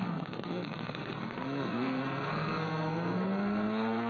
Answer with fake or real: fake